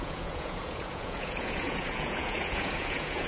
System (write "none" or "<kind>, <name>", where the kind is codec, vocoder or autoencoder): vocoder, Vocos